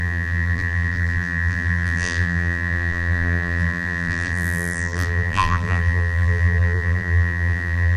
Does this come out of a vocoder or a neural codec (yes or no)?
yes